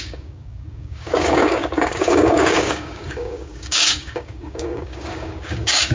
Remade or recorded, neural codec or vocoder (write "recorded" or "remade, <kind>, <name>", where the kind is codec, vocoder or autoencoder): remade, codec, DAC